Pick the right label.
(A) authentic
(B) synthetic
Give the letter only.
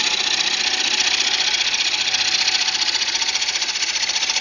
A